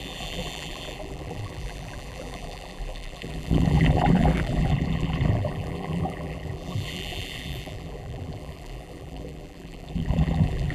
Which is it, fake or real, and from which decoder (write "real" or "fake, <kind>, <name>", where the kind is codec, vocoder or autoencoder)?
fake, vocoder, BigVGAN v2